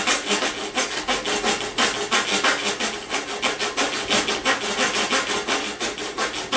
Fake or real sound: real